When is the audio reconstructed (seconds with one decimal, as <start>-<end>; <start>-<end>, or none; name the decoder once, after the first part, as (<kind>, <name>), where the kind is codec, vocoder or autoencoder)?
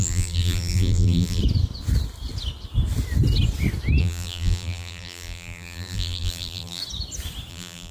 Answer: 0.0-1.4 (vocoder, BigVGAN v2); 4.0-6.8; 7.5-7.9